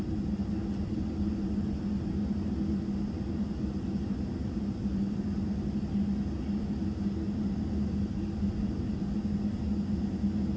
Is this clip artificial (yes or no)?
no